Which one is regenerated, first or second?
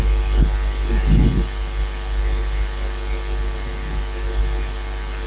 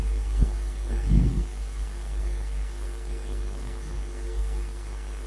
second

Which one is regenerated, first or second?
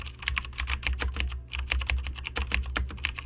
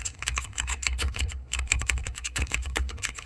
second